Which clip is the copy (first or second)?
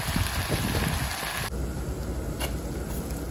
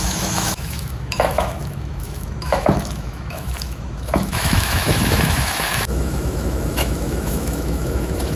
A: second